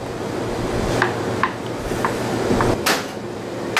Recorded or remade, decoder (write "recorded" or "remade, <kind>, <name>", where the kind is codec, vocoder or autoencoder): recorded